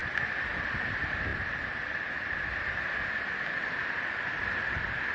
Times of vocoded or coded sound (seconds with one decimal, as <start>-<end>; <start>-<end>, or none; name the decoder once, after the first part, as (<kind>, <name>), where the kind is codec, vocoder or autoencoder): 0.5-5.1 (vocoder, BigVGAN v2)